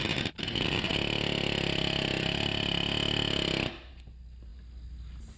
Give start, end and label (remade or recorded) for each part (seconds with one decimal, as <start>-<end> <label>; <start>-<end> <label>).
0.0-5.4 recorded